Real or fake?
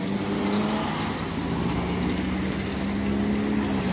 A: real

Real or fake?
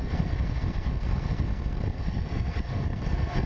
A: fake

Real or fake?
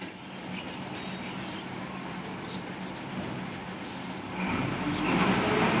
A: real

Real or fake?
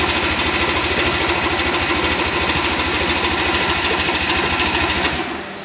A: real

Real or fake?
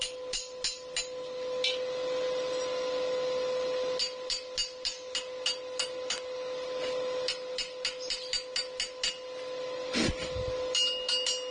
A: real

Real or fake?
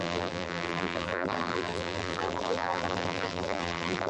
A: fake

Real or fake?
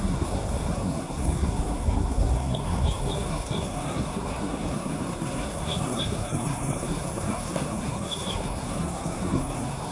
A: fake